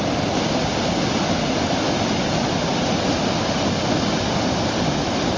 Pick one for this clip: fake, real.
real